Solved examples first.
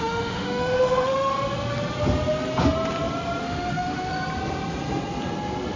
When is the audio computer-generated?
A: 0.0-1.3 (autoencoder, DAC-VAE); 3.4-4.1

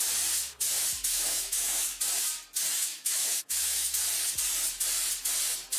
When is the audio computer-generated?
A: 1.1-2.0 (autoencoder, DAC-VAE); 2.9-4.0

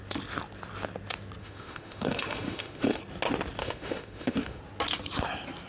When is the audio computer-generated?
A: 1.4-3.0 (autoencoder, DAC-VAE); 3.6-4.6

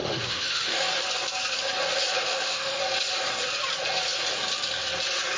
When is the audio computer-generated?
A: 0.0-0.8 (autoencoder, DAC-VAE); 2.3-2.8

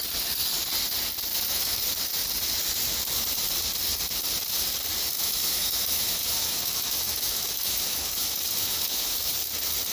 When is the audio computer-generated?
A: 1.3-1.8 (autoencoder, DAC-VAE); 5.2-9.3

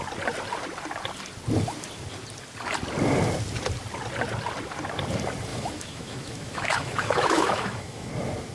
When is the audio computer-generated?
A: 5.5-8.1 (autoencoder, DAC-VAE)